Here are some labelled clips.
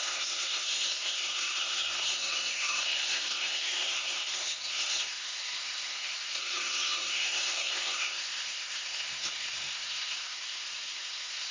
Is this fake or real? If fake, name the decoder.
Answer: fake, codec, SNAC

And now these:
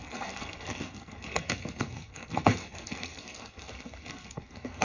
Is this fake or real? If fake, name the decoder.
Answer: fake, codec, SNAC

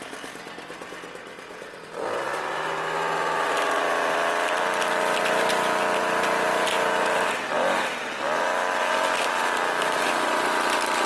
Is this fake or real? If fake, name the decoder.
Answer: real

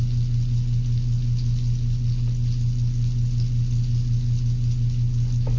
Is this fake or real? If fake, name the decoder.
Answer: real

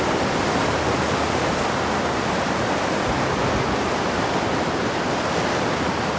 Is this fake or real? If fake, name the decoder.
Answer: real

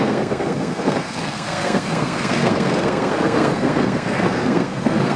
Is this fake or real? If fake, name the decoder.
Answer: fake, codec, SNAC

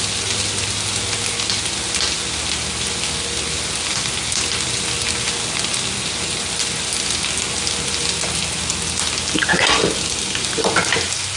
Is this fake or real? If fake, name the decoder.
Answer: real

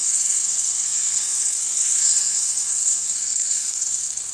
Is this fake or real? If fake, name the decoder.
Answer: fake, codec, SNAC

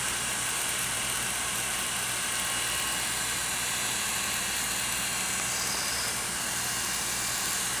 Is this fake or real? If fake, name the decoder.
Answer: real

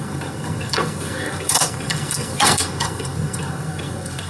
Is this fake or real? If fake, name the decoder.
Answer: fake, codec, SNAC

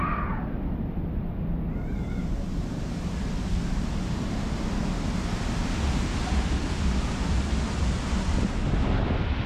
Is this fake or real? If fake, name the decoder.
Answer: real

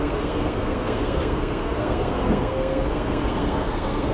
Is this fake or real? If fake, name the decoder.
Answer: fake, codec, SNAC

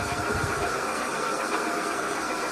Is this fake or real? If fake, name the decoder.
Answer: fake, codec, SNAC